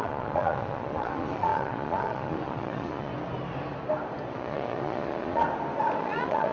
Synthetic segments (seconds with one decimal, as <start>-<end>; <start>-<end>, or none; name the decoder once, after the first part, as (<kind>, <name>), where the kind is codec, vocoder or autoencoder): 0.0-3.1 (vocoder, Vocos); 4.3-5.4; 6.0-6.5